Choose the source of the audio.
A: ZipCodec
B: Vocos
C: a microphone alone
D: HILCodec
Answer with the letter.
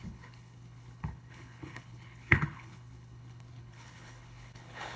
D